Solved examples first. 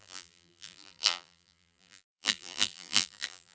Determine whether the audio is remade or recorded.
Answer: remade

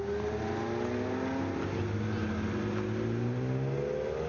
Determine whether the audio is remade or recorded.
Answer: recorded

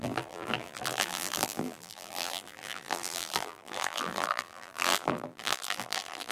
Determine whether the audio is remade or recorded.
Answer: remade